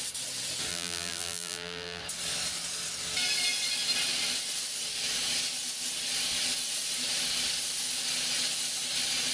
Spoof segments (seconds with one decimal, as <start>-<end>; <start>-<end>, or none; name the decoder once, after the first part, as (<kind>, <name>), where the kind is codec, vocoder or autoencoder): 0.7-2.0 (vocoder, BigVGAN v2)

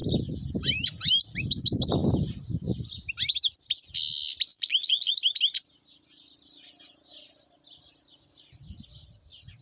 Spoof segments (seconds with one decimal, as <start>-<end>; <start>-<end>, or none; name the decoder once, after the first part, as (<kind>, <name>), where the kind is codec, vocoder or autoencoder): 4.5-5.1 (vocoder, BigVGAN v2)

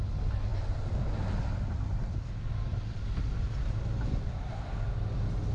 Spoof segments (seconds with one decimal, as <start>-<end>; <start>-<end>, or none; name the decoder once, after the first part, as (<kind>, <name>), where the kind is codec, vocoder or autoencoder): 2.7-4.5 (vocoder, BigVGAN v2)

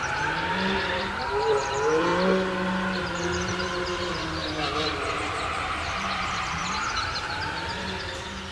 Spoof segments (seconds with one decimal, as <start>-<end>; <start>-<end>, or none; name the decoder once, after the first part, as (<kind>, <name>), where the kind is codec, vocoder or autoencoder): 0.0-2.1 (vocoder, BigVGAN v2); 3.0-4.4; 5.1-6.6; 7.3-8.5